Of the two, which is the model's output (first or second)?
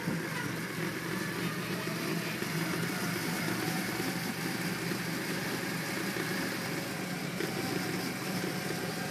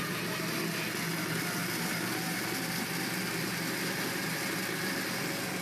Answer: first